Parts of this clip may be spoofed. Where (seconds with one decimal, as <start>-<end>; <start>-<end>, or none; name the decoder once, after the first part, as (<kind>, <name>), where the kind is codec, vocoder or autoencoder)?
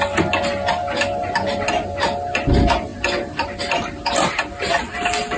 none